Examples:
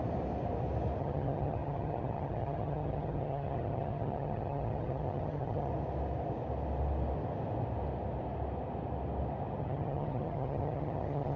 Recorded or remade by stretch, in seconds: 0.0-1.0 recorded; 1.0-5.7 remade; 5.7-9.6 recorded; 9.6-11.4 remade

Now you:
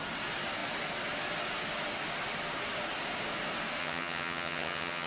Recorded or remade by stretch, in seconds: 0.0-3.8 recorded; 3.8-5.1 remade

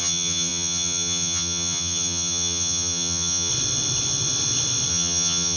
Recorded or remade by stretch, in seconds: 0.0-3.5 remade; 3.5-4.9 recorded; 4.9-5.6 remade

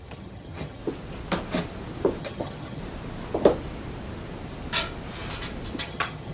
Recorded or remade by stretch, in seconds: 0.0-0.8 remade; 0.8-2.2 recorded; 2.2-2.8 remade; 2.8-5.8 recorded; 5.8-6.3 remade

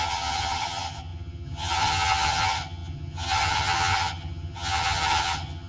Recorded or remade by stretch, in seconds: 0.0-5.7 remade

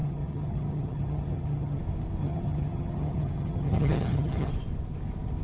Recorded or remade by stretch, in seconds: 0.0-1.8 remade; 1.8-2.2 recorded; 2.2-4.5 remade; 4.5-5.4 recorded